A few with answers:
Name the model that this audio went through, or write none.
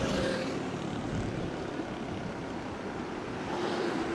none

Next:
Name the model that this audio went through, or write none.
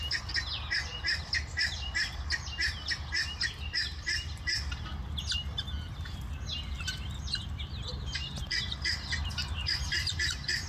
none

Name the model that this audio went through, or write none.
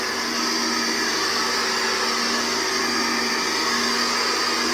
none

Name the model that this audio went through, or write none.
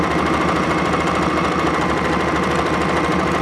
none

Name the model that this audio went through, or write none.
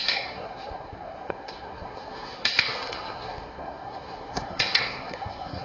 codec, SNAC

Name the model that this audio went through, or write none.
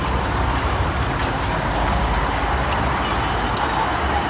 none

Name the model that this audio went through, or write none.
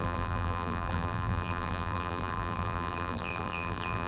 vocoder, BigVGAN v2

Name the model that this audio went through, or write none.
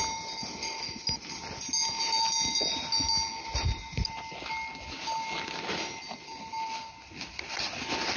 none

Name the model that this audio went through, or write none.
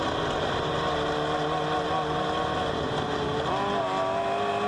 none